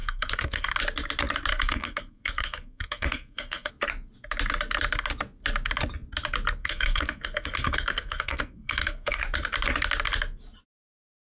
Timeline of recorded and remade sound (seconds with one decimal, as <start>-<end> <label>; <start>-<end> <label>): 0.0-0.7 remade; 0.7-1.5 recorded; 1.5-3.7 remade; 3.7-6.6 recorded; 6.6-9.2 remade; 9.2-11.2 recorded